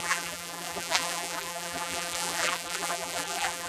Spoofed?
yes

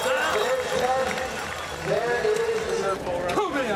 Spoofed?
no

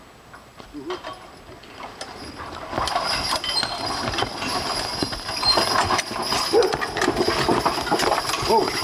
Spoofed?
no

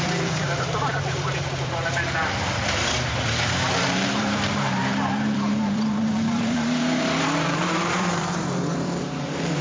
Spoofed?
yes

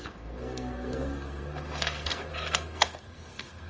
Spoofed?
yes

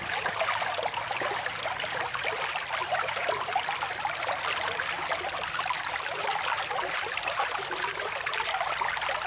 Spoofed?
no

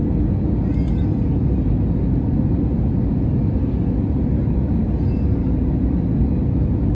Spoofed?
no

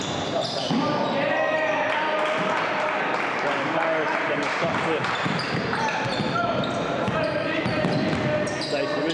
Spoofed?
yes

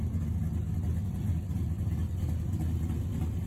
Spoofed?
no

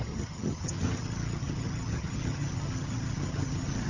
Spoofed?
yes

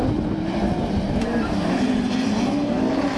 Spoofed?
yes